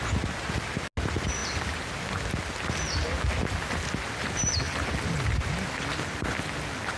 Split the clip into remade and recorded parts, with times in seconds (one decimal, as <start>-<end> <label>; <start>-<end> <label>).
0.0-7.0 recorded